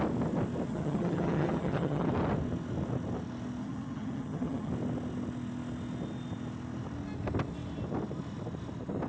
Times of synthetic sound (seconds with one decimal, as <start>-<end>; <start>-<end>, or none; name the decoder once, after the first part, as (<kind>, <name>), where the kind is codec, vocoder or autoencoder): 0.7-2.1 (vocoder, HiFi-GAN); 3.6-4.7